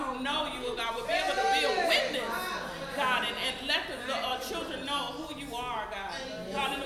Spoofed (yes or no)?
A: no